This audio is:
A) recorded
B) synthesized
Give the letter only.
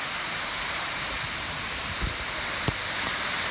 B